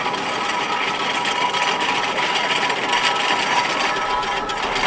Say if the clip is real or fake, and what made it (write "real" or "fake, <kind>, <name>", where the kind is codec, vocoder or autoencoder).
real